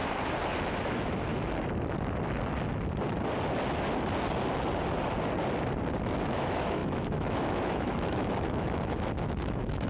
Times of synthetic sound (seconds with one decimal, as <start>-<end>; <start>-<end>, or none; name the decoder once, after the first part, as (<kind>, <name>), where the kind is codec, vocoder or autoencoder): 0.7-1.3 (autoencoder, DAC-VAE); 6.3-9.9